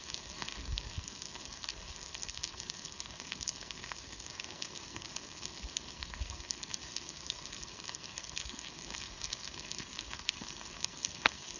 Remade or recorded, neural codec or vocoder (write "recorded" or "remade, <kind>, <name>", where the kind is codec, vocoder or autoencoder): remade, codec, SNAC